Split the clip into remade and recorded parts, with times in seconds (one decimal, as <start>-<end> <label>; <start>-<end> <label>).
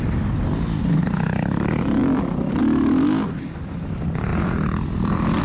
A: 0.0-2.0 recorded; 2.0-2.6 remade; 2.6-4.3 recorded; 4.3-5.4 remade